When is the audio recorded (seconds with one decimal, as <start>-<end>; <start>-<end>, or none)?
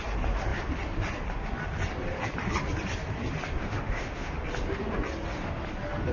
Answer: 0.0-3.6; 4.3-6.1